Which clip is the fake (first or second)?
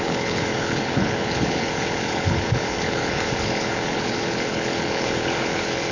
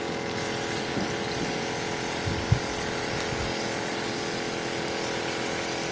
first